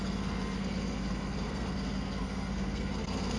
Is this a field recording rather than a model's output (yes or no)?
no